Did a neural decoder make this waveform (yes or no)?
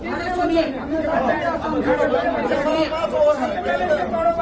yes